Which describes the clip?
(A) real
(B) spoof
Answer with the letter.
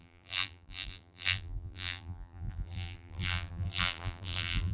B